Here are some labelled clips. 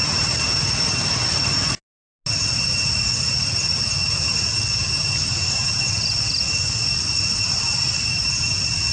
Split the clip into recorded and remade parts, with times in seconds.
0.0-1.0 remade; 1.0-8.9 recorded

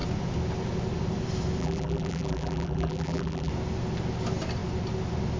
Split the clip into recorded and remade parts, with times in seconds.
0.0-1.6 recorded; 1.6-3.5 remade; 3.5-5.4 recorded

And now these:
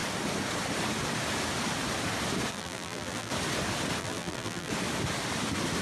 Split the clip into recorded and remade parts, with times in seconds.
0.0-2.5 recorded; 2.5-3.3 remade; 3.3-4.0 recorded; 4.0-4.7 remade; 4.7-5.8 recorded

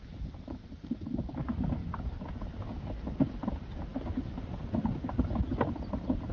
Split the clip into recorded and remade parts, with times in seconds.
0.0-1.4 remade; 1.4-6.3 recorded

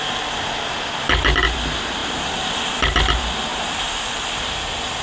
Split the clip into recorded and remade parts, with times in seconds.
0.0-2.0 recorded; 2.0-2.8 remade; 2.8-3.5 recorded; 3.5-4.4 remade; 4.4-5.0 recorded

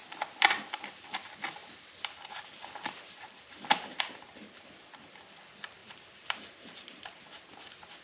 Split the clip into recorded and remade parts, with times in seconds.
0.0-1.6 recorded; 1.6-4.0 remade; 4.0-5.8 recorded; 5.8-7.4 remade; 7.4-8.0 recorded

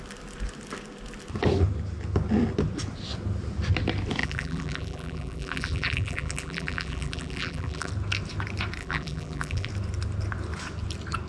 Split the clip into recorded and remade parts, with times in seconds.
0.0-4.2 recorded; 4.2-7.9 remade; 7.9-8.8 recorded; 8.8-9.7 remade; 9.7-11.3 recorded